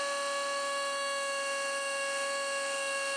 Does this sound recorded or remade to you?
remade